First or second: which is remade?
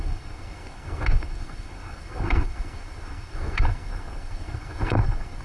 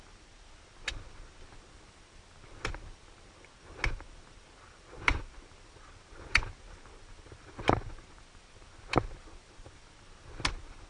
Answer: first